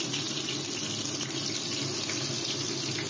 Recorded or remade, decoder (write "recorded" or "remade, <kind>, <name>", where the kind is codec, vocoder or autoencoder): recorded